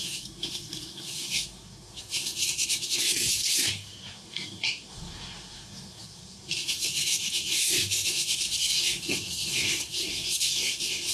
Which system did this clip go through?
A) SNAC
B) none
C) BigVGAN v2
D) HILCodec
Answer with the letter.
A